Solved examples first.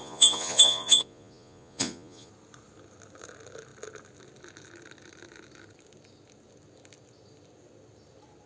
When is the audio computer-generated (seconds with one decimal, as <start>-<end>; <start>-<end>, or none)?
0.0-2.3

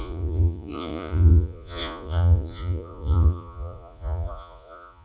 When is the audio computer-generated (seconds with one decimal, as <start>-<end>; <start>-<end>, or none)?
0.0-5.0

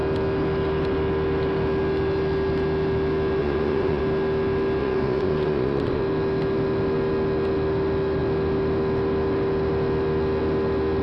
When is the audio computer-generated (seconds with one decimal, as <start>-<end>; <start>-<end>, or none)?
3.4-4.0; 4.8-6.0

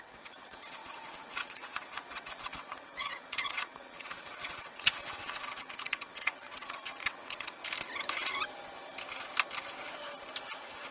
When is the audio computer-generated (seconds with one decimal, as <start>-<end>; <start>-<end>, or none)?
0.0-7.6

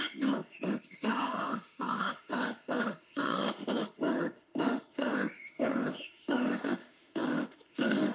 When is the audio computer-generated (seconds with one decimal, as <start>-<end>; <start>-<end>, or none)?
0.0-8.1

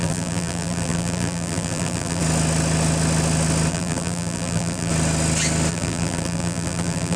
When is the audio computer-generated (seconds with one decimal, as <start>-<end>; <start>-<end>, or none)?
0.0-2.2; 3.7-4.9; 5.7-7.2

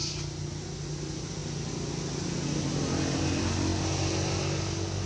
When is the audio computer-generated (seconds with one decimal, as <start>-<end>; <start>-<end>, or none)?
none